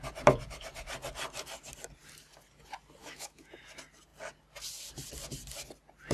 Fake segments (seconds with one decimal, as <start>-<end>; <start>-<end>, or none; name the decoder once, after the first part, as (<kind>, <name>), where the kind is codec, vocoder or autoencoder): 3.0-3.6 (autoencoder, DAC-VAE)